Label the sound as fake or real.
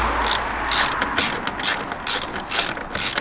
real